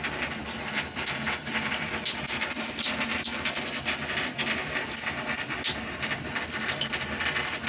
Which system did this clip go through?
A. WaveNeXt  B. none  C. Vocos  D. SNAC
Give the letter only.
B